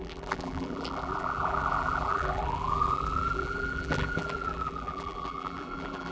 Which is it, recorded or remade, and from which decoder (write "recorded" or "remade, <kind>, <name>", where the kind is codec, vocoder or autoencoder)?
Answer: remade, vocoder, BigVGAN v2